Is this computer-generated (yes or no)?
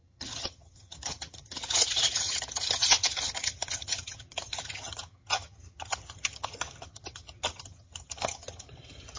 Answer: yes